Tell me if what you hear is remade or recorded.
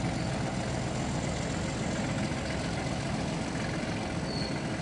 recorded